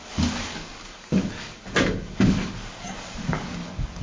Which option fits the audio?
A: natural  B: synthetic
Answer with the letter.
B